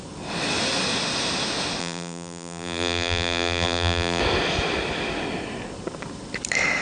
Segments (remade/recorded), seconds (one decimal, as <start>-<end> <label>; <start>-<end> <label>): 0.0-1.8 recorded; 1.8-4.2 remade; 4.2-6.8 recorded